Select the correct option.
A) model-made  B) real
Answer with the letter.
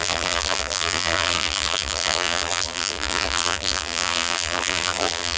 A